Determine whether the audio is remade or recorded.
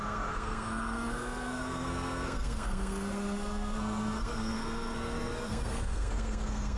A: remade